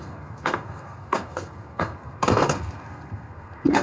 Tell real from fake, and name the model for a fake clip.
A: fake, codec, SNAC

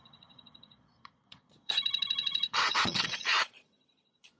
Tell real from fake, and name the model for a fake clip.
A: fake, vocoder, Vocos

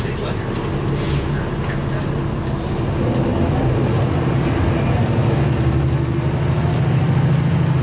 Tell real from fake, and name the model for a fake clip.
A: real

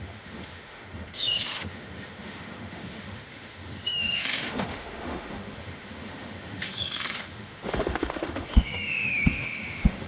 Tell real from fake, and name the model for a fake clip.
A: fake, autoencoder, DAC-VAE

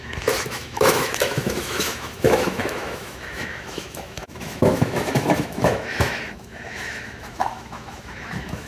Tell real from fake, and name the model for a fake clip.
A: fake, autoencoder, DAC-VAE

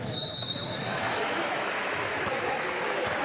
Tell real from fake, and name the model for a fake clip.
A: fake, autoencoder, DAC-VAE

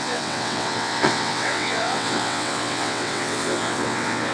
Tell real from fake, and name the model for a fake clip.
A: fake, vocoder, WaveNeXt